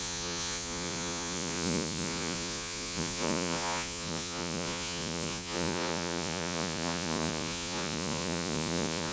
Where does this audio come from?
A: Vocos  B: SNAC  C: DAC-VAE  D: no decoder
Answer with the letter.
A